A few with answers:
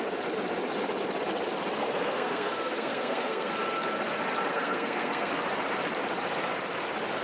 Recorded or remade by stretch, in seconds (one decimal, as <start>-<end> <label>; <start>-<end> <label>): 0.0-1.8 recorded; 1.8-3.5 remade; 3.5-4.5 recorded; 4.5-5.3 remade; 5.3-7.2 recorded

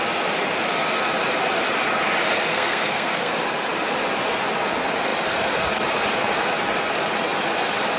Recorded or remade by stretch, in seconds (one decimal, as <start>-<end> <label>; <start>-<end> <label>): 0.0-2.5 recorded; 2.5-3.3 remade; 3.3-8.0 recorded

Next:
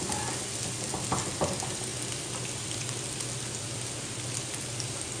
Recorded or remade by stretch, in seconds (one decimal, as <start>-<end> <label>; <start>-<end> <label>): 0.0-5.2 recorded